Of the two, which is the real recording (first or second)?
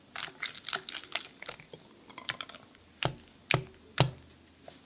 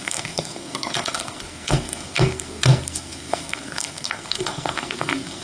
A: first